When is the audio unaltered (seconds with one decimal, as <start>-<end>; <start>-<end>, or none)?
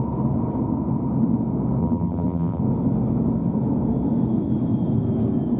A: 0.0-1.8; 2.6-5.6